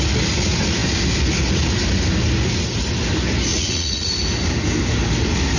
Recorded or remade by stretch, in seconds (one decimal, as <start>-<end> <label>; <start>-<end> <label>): 0.0-3.5 recorded; 3.5-4.1 remade; 4.1-5.6 recorded